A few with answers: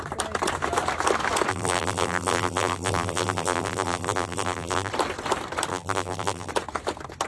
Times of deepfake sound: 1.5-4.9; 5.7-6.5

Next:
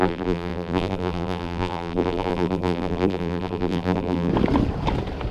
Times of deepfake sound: 0.0-4.3